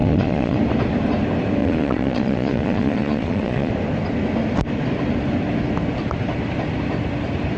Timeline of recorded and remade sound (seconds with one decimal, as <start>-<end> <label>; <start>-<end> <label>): 0.0-0.6 remade; 0.6-1.6 recorded; 1.6-3.7 remade; 3.7-7.6 recorded